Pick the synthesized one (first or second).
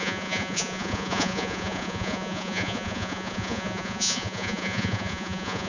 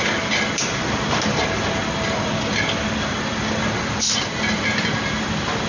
first